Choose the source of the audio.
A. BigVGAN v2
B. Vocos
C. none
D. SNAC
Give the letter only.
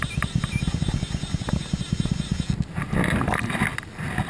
C